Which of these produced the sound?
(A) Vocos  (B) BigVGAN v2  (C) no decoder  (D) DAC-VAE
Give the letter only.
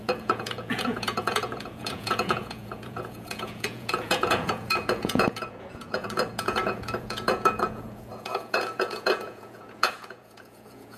A